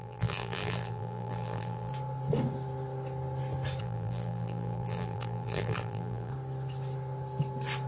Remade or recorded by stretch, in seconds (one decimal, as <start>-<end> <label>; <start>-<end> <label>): 0.0-1.9 remade; 1.9-3.8 recorded; 3.8-6.3 remade; 6.3-7.9 recorded